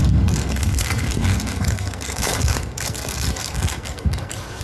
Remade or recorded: remade